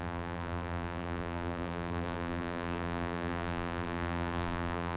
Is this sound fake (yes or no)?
yes